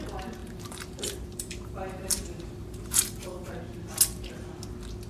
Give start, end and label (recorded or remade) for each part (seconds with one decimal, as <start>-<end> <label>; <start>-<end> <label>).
0.0-0.4 recorded; 0.4-3.5 remade; 3.5-5.1 recorded